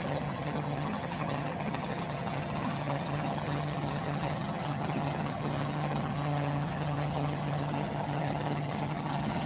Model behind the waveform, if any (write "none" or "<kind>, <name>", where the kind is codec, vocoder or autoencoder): vocoder, HiFi-GAN